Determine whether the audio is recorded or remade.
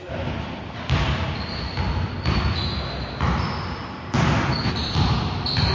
recorded